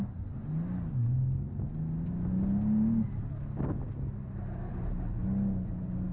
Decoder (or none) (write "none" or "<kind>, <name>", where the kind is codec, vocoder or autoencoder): none